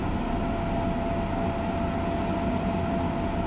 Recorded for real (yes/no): yes